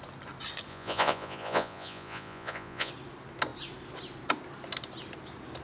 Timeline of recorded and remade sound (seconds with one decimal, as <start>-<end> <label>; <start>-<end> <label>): 0.0-0.7 recorded; 0.7-2.9 remade; 2.9-5.6 recorded